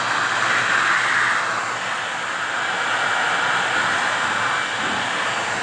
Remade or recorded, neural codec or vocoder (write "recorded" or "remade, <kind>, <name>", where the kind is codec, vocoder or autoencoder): recorded